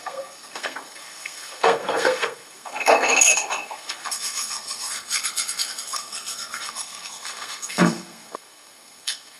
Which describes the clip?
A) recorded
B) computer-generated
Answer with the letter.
B